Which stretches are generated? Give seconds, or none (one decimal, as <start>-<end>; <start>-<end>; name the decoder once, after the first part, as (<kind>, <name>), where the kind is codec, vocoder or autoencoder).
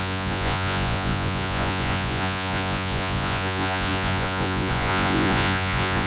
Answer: 0.0-6.1 (vocoder, Vocos)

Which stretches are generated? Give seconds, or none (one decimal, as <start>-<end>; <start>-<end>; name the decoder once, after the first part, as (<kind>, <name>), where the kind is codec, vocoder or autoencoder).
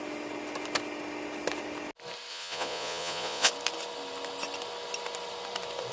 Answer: 2.3-3.5 (vocoder, Vocos)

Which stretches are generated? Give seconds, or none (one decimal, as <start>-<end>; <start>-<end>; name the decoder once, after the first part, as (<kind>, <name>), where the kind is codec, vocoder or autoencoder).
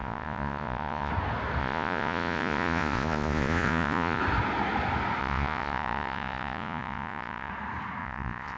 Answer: 0.0-1.1 (vocoder, Vocos); 1.6-4.2; 5.2-7.5; 8.0-8.6